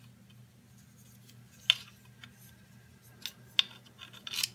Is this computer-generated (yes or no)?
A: no